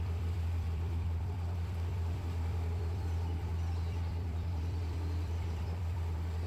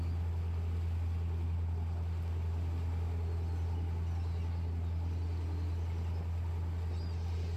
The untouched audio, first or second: second